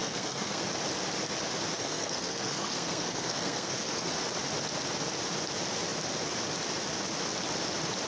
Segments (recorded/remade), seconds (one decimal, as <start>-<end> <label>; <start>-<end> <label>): 0.0-0.6 remade; 0.6-1.7 recorded; 1.7-4.1 remade; 4.1-8.1 recorded